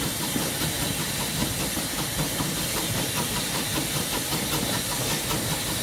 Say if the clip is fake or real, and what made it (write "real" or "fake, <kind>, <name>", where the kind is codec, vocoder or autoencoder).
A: real